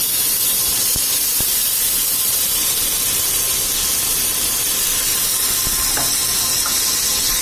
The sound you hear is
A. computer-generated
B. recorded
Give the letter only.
B